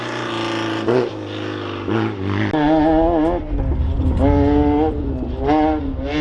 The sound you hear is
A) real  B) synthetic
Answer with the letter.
A